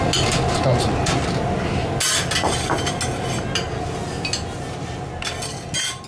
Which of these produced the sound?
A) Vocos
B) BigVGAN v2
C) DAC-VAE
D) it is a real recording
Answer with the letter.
D